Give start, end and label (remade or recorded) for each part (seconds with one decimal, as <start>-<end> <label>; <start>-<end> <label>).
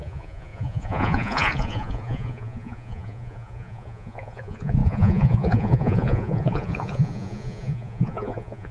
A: 0.0-8.7 remade